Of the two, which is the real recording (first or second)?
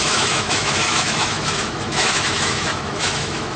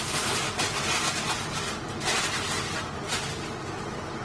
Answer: second